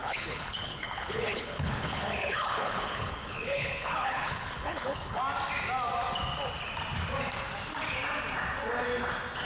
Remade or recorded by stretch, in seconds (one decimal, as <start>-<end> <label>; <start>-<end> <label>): 0.0-5.2 remade; 5.2-9.5 recorded